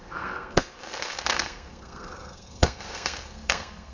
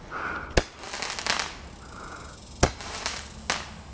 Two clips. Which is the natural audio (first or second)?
second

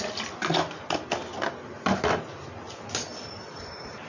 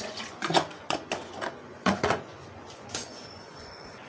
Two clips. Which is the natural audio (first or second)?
first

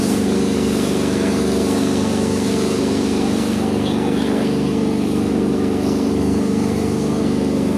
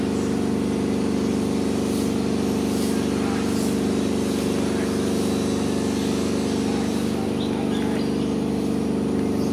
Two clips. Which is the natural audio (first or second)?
second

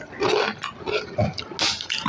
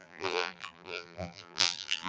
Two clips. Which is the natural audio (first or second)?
first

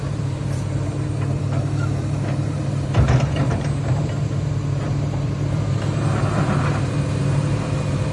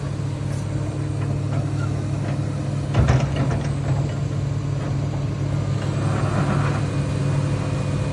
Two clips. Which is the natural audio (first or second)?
second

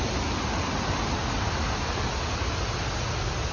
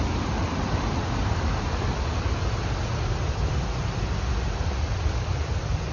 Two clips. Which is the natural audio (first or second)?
first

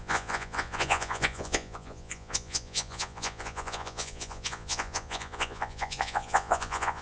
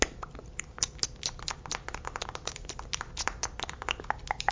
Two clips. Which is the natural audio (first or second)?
second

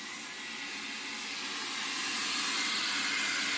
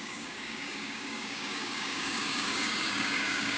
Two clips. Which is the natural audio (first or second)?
first